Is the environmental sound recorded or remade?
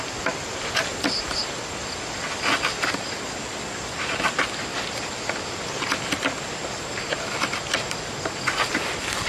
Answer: recorded